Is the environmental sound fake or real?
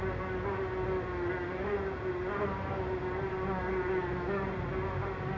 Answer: real